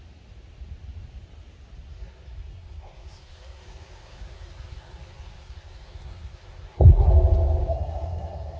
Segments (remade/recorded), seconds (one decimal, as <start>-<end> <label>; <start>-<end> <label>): 0.0-1.9 recorded; 1.9-7.1 remade; 7.1-7.7 recorded; 7.7-8.6 remade